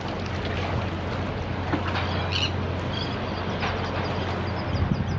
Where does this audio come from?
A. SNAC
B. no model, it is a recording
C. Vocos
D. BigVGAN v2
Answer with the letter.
B